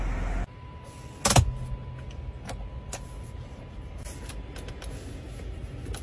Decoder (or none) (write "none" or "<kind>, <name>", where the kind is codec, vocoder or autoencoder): none